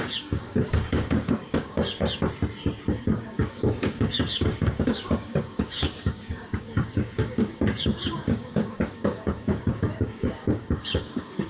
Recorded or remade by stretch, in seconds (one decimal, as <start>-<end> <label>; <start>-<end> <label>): 0.0-2.0 remade; 2.0-2.9 recorded; 2.9-11.5 remade